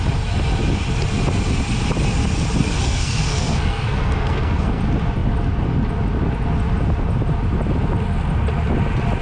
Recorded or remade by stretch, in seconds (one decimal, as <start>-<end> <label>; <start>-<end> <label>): 0.0-2.6 recorded; 2.6-4.8 remade; 4.8-9.2 recorded